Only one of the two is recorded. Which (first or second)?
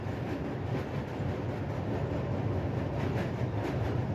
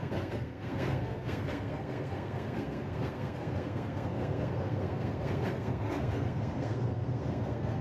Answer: first